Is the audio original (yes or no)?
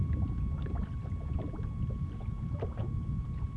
yes